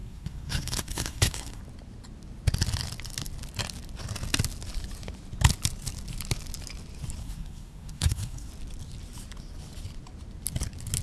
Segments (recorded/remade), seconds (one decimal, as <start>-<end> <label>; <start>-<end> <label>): 0.0-1.6 remade; 1.6-7.2 recorded; 7.2-8.5 remade; 8.5-11.0 recorded